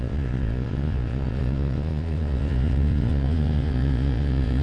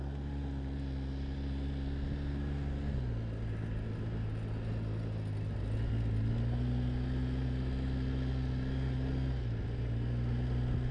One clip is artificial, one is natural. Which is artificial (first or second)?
first